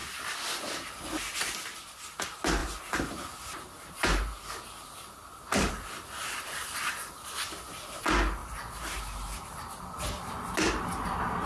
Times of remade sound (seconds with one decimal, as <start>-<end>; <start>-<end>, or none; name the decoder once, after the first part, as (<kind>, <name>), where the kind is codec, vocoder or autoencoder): 2.6-5.7 (vocoder, BigVGAN v2)